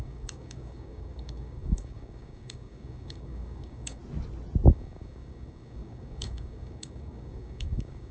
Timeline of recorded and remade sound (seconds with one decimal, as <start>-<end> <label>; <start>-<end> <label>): 0.0-4.0 remade; 4.0-4.7 recorded; 4.7-8.1 remade